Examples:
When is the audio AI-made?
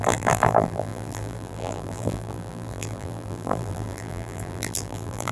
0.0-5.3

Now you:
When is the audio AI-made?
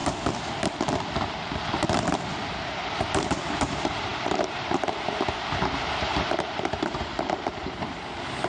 2.5-8.5